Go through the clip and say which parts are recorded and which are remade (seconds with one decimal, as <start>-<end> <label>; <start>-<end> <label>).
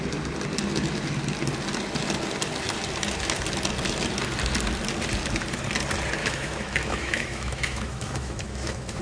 0.0-6.2 recorded; 6.2-9.0 remade